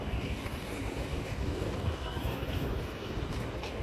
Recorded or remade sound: remade